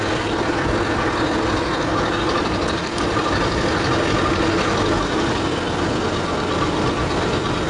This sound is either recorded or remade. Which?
recorded